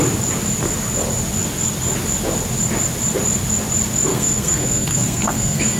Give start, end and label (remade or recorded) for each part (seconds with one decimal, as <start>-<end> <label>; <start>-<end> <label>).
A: 0.0-4.1 recorded; 4.1-5.8 remade